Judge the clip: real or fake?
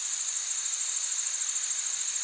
real